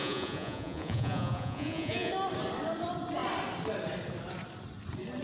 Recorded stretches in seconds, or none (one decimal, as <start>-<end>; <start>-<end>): 2.1-5.2

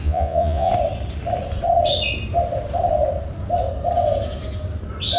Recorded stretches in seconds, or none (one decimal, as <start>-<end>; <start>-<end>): 0.7-5.2